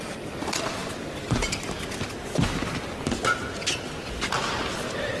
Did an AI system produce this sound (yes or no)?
no